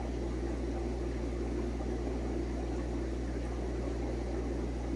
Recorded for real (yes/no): yes